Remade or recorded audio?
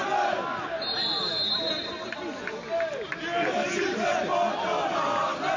recorded